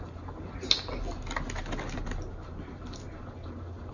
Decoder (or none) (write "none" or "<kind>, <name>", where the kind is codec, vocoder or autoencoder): none